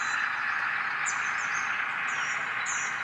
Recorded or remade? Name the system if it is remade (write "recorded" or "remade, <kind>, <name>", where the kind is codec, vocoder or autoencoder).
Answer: recorded